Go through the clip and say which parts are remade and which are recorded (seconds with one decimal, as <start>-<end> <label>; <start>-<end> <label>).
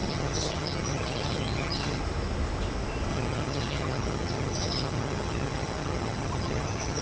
0.0-2.0 remade; 2.0-3.1 recorded; 3.1-7.0 remade